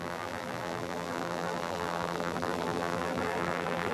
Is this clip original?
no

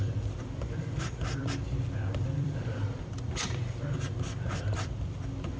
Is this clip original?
no